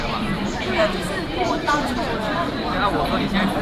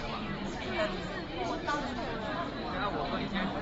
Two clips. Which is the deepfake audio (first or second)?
first